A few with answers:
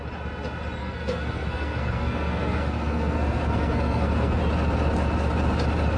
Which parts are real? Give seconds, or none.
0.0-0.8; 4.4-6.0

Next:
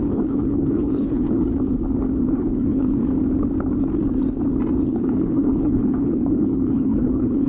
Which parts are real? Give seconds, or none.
1.5-2.3; 3.0-4.8

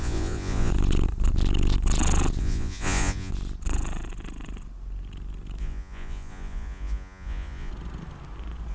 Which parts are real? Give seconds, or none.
0.7-2.4; 3.3-5.6; 7.7-8.7

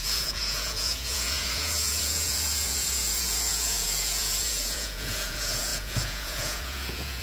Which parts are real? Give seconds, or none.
none

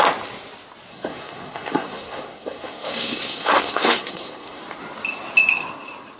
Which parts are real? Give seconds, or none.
0.0-0.9; 4.6-6.2

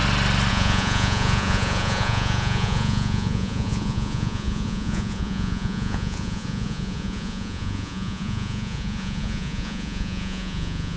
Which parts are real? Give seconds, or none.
0.0-0.5

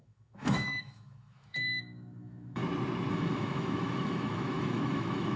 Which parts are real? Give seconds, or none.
2.6-3.1

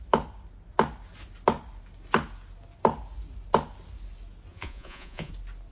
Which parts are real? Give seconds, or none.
0.0-4.5; 5.3-5.7